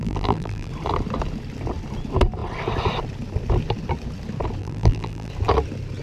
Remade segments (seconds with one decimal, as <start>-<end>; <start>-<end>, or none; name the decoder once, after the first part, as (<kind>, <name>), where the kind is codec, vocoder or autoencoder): 0.0-0.7 (vocoder, BigVGAN v2); 4.6-5.3